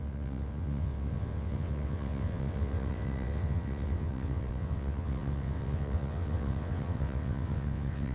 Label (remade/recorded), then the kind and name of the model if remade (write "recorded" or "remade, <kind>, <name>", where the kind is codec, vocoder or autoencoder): remade, vocoder, WaveNeXt